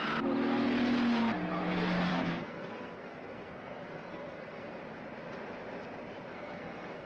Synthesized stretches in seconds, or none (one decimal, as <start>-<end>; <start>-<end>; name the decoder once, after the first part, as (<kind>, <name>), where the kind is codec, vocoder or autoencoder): 2.1-4.8 (codec, SNAC); 6.3-7.1